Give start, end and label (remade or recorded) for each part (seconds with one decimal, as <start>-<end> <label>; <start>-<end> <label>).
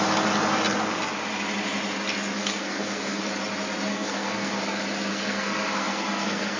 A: 0.0-2.4 recorded; 2.4-3.2 remade; 3.2-3.9 recorded; 3.9-4.6 remade; 4.6-5.1 recorded; 5.1-6.6 remade